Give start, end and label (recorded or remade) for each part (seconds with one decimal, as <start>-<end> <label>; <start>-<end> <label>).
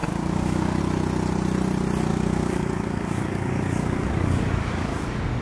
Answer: 0.0-0.8 remade; 0.8-2.1 recorded; 2.1-5.4 remade